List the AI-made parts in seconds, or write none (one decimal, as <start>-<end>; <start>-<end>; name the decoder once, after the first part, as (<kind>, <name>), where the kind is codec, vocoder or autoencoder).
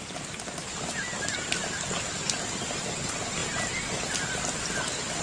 none